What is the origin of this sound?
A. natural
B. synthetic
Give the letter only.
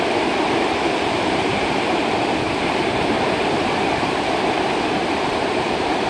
A